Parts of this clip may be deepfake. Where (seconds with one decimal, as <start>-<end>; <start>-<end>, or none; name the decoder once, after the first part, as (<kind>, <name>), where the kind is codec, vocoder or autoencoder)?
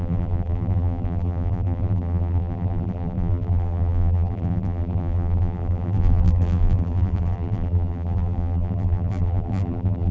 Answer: 0.0-10.1 (vocoder, BigVGAN v2)